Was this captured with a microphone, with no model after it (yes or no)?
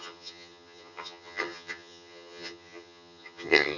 no